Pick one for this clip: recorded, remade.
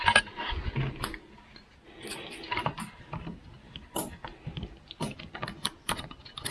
recorded